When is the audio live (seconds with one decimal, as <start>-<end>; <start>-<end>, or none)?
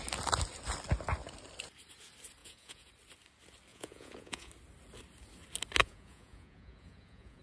0.0-2.4; 2.9-3.7; 4.5-5.8